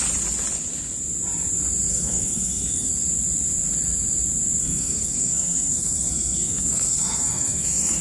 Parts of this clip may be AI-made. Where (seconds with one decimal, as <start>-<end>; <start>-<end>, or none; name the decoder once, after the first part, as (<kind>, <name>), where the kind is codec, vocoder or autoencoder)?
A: 1.9-2.9 (codec, SNAC); 4.6-8.0